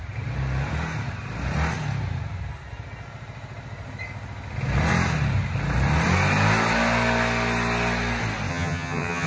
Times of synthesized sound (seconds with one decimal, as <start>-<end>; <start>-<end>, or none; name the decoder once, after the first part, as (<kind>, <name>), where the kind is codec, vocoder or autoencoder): 8.5-9.3 (vocoder, HiFi-GAN)